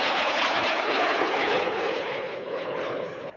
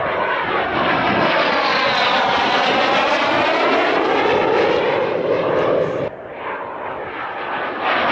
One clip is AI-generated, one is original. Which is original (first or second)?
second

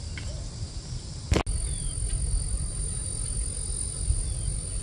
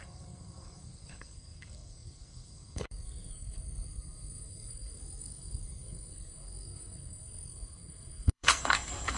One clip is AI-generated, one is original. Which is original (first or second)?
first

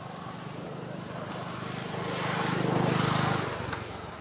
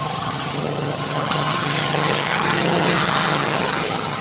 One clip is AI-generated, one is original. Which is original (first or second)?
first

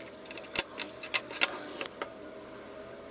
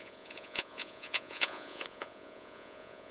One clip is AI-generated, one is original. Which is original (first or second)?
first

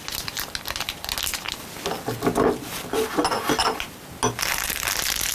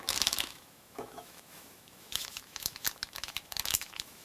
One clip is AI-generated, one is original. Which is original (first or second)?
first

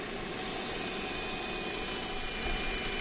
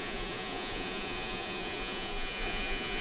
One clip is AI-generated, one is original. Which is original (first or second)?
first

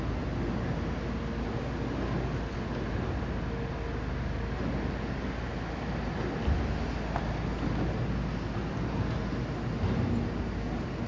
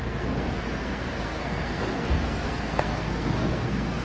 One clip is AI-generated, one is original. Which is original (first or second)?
first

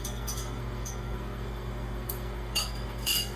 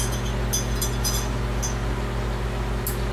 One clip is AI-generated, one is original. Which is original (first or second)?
second